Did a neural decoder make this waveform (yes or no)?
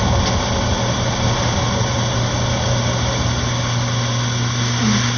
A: no